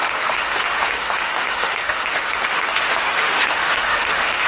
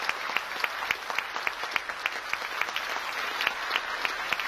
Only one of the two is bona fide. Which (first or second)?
second